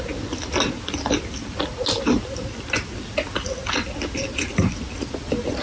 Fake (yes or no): no